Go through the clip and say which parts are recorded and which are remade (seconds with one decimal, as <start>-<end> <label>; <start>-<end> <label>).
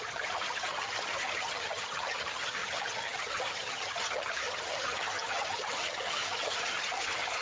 0.0-7.4 remade